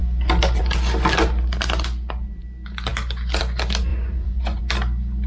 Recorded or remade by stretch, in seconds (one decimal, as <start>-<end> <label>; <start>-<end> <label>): 0.0-3.9 recorded; 3.9-4.6 remade; 4.6-5.3 recorded